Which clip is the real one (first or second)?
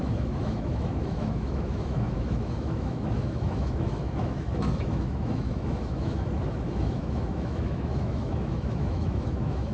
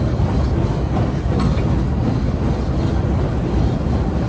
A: second